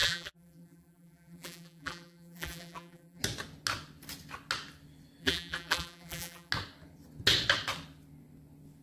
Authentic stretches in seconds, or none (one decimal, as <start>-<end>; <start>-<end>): 3.2-5.2; 6.5-8.8

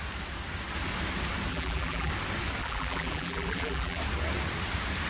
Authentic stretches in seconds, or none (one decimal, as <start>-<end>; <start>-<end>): 0.0-1.5; 2.1-2.6; 4.0-5.1

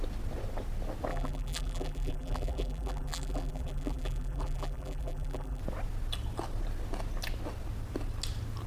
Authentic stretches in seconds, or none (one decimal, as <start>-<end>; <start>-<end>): 0.0-1.1; 5.6-8.7

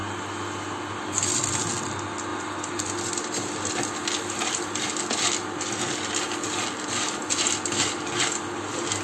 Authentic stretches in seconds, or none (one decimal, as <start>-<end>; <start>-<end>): 1.6-2.3; 3.7-9.0

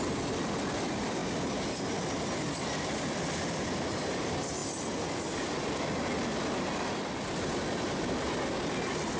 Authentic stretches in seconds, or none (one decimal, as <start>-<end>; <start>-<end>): 0.0-9.2

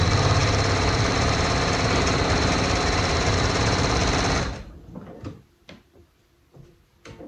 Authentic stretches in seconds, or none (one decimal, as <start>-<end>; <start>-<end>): 4.0-7.3

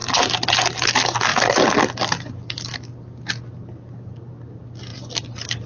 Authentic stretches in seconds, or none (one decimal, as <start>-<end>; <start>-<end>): 0.0-1.3; 2.3-4.9

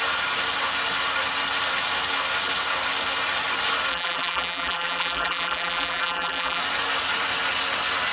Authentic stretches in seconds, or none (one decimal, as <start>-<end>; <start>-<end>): 0.0-3.9; 6.6-8.1